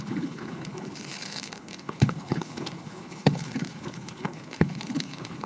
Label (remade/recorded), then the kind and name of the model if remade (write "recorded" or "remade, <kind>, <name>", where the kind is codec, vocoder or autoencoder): remade, codec, HILCodec